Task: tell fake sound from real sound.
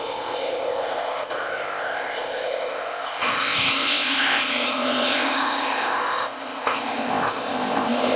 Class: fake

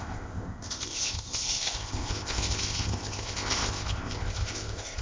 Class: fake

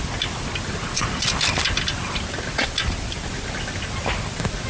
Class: real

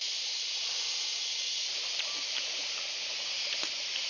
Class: real